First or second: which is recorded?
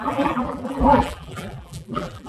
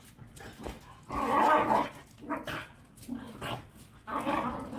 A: second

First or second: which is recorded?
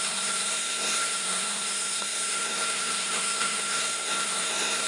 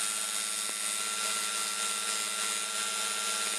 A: second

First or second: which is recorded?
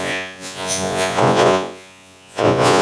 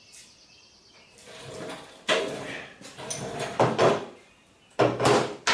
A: second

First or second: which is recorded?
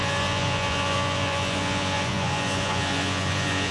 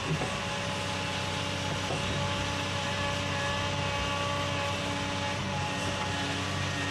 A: second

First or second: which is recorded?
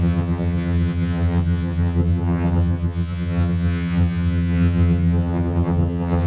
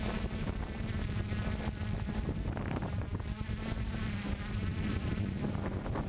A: second